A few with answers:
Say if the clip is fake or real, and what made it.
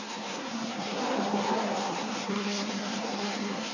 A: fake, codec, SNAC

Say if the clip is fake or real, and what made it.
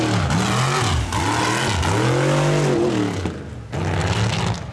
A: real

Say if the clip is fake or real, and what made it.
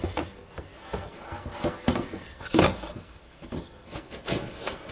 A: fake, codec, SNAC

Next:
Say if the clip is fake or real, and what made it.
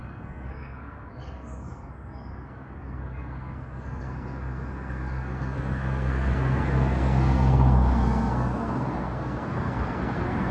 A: fake, codec, SNAC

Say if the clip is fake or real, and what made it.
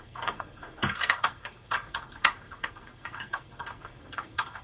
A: fake, codec, SNAC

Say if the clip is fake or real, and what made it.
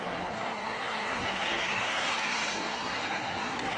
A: fake, codec, SNAC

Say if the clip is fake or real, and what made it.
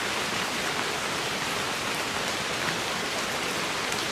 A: real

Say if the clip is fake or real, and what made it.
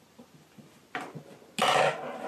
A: real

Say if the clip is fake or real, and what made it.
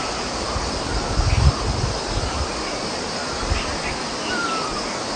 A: real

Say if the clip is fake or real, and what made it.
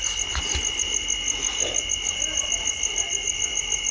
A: real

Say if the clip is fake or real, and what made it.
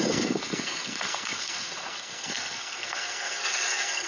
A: fake, codec, SNAC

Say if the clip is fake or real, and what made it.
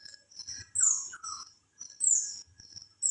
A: real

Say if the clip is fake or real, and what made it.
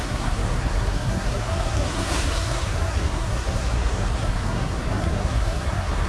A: fake, codec, SNAC